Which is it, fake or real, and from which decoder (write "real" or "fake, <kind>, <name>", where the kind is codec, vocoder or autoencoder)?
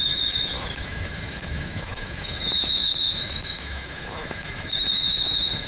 fake, autoencoder, DAC-VAE